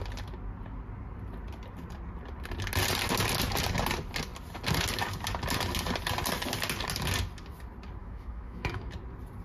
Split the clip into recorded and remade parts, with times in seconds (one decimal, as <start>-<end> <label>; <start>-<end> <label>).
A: 0.0-8.0 recorded; 8.0-8.9 remade; 8.9-9.4 recorded